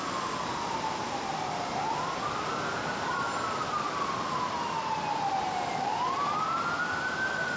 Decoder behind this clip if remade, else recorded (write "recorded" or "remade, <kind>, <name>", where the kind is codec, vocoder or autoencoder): recorded